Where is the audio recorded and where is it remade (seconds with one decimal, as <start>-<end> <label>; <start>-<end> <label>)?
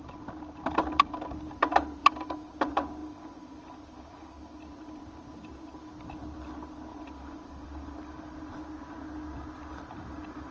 0.0-2.0 recorded; 2.0-2.5 remade; 2.5-3.0 recorded; 3.0-4.6 remade; 4.6-6.9 recorded; 6.9-8.5 remade; 8.5-9.7 recorded; 9.7-10.5 remade